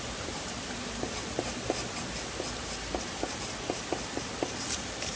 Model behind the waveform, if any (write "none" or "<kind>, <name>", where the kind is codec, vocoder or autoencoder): none